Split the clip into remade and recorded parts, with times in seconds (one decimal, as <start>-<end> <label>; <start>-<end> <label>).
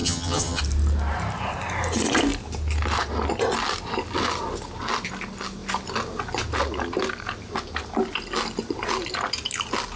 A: 0.0-0.6 remade; 0.6-10.0 recorded